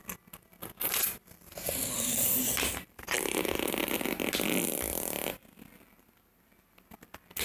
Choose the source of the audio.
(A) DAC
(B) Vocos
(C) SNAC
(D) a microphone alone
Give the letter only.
D